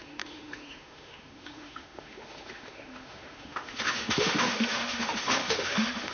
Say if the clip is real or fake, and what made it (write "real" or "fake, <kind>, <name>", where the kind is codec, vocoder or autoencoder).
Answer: fake, autoencoder, DAC-VAE